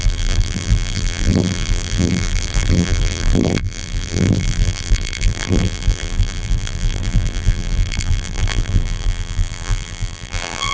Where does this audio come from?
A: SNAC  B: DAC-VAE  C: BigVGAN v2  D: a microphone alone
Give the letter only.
C